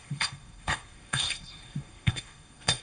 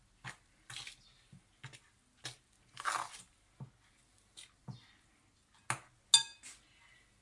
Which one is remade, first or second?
first